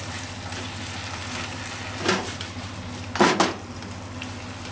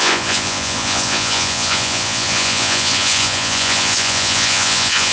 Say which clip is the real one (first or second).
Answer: first